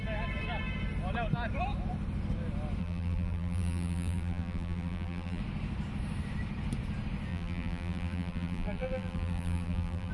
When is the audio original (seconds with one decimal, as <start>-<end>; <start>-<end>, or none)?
0.0-2.8; 5.4-7.3